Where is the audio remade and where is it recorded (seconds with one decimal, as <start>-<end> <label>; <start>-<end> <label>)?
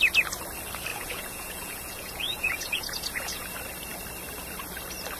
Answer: 0.0-0.9 recorded; 0.9-3.5 remade; 3.5-5.2 recorded